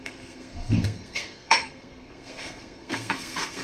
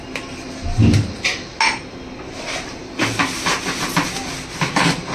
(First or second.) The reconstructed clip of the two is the first